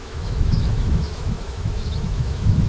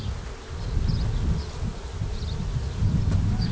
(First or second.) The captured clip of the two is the second